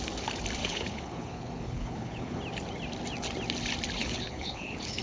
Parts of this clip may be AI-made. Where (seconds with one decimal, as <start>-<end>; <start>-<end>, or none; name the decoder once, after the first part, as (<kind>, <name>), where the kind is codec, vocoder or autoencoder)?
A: 0.6-2.4 (codec, HILCodec); 4.0-5.0